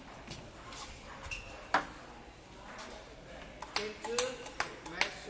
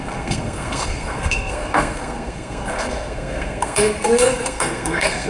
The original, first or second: first